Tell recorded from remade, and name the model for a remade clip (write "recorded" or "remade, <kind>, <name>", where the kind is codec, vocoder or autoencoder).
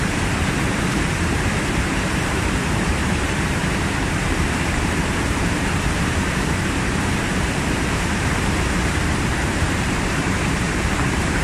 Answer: remade, vocoder, BigVGAN v2